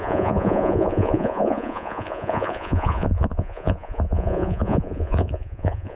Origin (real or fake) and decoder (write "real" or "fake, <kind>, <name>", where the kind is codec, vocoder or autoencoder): fake, vocoder, Vocos